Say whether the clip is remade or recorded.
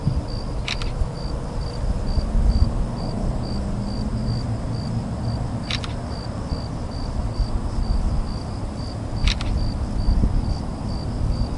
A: recorded